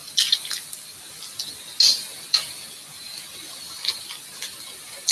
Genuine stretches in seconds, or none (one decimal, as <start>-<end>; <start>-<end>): 0.0-5.1